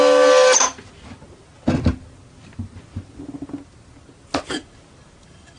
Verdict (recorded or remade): recorded